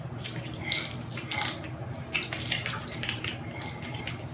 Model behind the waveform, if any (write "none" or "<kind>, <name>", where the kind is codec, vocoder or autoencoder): none